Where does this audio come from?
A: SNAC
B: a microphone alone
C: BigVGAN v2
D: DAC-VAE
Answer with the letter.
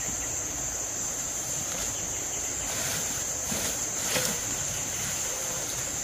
C